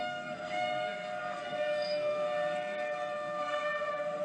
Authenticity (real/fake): fake